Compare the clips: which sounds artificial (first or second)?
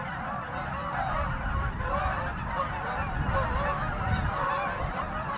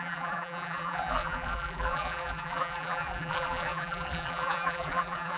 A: second